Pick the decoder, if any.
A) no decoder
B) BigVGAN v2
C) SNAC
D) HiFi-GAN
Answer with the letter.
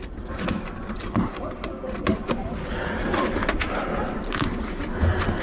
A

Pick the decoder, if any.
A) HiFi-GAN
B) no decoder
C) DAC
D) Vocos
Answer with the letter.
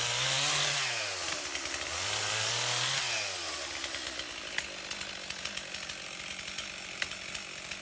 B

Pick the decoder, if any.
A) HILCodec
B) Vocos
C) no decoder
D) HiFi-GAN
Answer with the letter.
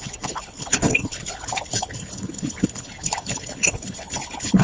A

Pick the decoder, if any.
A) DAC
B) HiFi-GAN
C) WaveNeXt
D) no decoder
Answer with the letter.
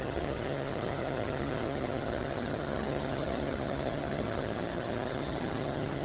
B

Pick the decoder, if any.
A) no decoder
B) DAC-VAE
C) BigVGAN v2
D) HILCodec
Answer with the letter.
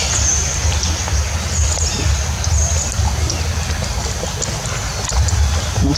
A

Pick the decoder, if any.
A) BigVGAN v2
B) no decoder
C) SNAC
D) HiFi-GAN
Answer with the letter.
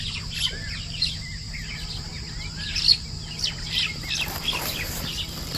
B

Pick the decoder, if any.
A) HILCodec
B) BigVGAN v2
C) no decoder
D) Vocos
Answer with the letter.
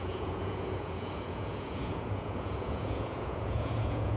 D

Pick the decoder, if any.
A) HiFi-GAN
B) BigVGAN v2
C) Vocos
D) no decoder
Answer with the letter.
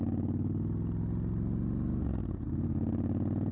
D